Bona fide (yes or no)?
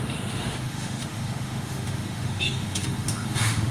no